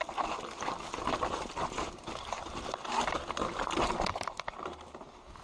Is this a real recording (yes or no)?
yes